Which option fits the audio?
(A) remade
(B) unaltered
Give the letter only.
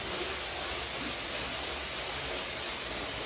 B